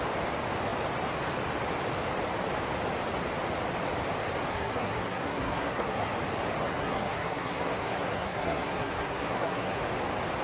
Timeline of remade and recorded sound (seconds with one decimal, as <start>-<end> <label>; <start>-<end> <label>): 0.0-4.5 recorded; 4.5-6.1 remade; 6.1-6.6 recorded; 6.6-9.8 remade; 9.8-10.4 recorded